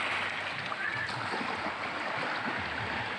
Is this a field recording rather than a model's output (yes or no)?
yes